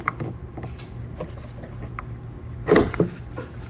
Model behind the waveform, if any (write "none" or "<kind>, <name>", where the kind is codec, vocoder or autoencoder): none